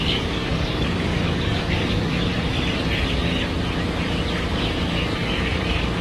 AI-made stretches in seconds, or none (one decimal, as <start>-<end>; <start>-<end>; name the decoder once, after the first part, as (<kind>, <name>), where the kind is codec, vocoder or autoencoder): 0.0-2.3 (codec, DAC); 4.6-6.0